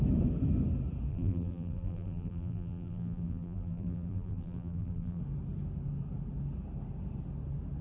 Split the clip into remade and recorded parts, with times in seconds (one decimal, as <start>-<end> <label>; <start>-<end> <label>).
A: 0.0-1.1 recorded; 1.1-5.2 remade; 5.2-7.8 recorded